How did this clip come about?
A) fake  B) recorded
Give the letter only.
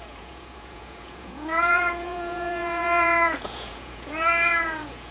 A